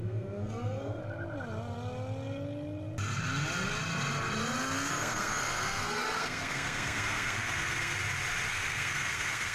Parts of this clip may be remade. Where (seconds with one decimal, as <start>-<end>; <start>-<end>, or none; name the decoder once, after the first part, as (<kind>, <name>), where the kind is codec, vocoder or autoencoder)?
0.0-1.0 (codec, SNAC); 4.9-8.0; 8.5-9.5